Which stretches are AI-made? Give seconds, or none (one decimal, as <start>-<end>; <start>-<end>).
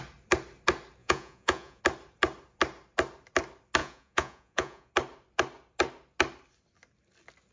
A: 1.0-1.8; 3.8-4.9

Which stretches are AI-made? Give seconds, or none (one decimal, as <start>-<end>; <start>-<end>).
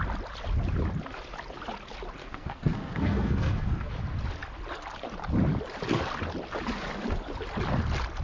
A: 2.2-3.9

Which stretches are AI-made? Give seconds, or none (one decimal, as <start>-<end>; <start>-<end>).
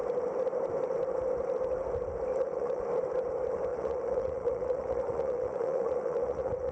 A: 2.3-2.8; 3.7-6.7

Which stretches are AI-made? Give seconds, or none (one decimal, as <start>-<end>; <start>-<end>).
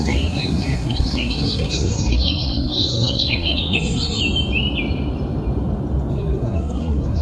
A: 0.0-4.2; 6.1-7.2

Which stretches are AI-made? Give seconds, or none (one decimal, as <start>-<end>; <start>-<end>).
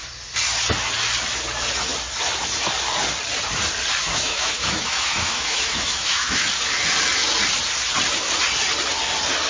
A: 4.0-6.5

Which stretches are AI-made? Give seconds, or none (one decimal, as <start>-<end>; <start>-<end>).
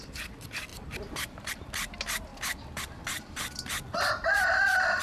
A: 0.7-1.5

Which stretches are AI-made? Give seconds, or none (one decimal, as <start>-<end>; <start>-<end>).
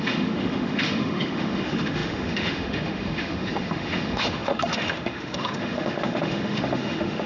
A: 0.0-7.3